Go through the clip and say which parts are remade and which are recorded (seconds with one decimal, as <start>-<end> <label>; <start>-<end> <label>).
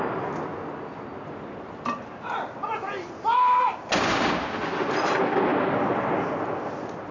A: 0.0-7.1 recorded